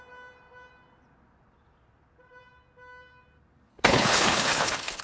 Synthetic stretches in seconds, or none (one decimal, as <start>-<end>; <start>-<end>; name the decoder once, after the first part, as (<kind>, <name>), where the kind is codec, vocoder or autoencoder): 3.7-5.0 (codec, HILCodec)